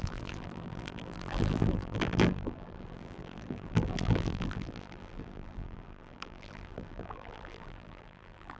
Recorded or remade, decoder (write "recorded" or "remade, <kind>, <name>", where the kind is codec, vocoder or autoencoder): remade, vocoder, BigVGAN v2